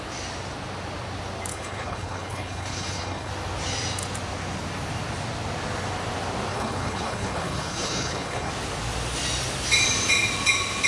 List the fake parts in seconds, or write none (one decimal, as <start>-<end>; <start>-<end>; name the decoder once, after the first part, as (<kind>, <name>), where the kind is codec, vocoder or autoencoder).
1.5-3.3 (codec, HILCodec); 6.5-8.5